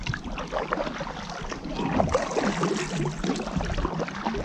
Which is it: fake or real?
real